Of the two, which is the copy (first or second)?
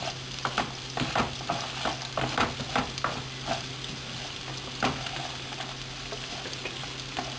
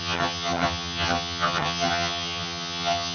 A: second